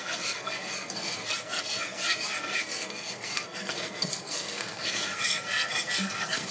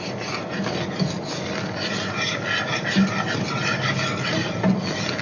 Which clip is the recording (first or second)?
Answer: second